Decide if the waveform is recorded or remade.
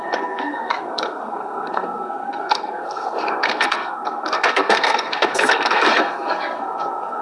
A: remade